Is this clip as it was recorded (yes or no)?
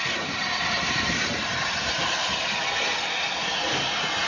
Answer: no